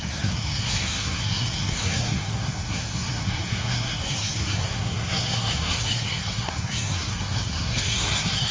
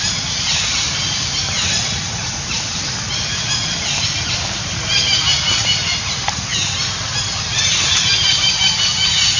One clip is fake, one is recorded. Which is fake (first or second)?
first